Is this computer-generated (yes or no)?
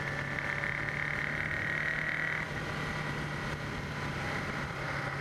no